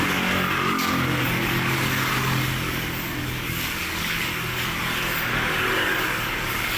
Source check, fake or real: fake